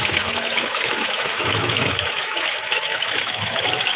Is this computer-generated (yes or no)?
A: yes